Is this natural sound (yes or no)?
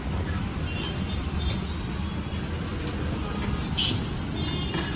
yes